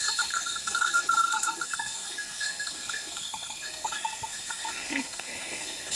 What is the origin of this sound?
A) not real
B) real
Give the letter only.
A